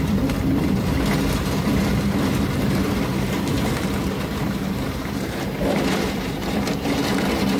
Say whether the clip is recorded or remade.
remade